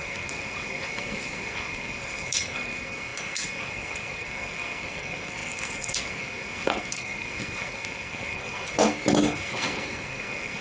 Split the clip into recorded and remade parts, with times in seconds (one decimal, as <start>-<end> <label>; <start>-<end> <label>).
0.0-10.6 remade